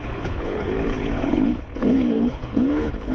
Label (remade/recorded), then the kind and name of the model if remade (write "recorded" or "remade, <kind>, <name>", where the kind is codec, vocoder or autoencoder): remade, codec, HILCodec